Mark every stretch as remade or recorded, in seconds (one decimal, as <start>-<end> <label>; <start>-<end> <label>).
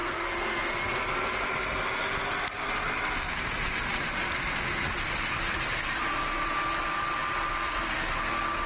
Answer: 0.0-0.7 remade; 0.7-8.7 recorded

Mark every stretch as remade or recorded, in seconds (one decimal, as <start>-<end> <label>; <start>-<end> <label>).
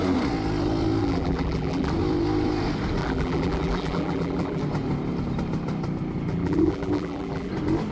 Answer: 0.0-1.0 recorded; 1.0-1.9 remade; 1.9-3.0 recorded; 3.0-4.6 remade; 4.6-6.3 recorded; 6.3-7.5 remade; 7.5-7.9 recorded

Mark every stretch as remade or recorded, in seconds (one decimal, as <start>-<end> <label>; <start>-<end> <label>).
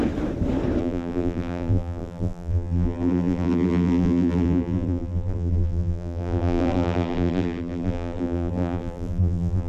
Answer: 0.0-0.8 recorded; 0.8-9.7 remade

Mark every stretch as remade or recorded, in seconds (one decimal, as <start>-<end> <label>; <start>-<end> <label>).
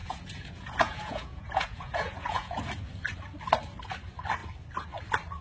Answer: 0.0-2.6 remade; 2.6-5.4 recorded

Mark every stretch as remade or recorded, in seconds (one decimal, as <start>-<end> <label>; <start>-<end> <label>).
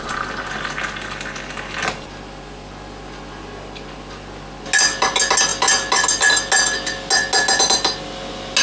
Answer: 0.0-8.6 recorded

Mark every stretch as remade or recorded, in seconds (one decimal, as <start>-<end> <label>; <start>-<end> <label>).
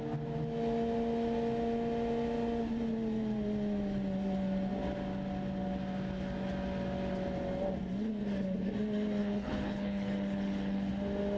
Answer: 0.0-9.2 recorded; 9.2-10.9 remade; 10.9-11.4 recorded